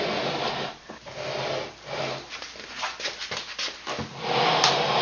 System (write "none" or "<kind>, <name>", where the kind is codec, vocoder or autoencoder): none